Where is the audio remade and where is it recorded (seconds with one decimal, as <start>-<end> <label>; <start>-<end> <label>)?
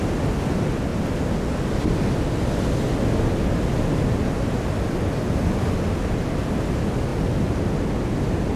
0.0-8.6 recorded